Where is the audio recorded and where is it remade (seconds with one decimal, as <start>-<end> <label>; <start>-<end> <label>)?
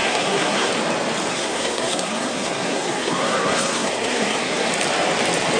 0.0-0.7 remade; 0.7-1.3 recorded; 1.3-4.7 remade; 4.7-5.6 recorded